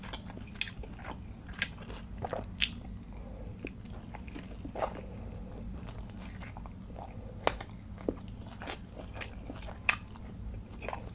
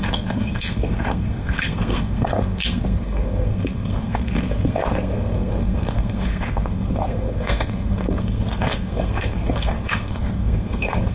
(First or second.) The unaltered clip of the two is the first